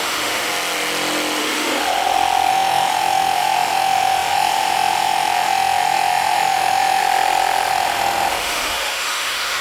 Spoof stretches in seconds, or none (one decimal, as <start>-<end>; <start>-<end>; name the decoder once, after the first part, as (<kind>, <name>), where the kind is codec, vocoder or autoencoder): 0.0-0.5 (autoencoder, DAC-VAE); 1.4-1.8; 2.5-7.0; 7.7-9.6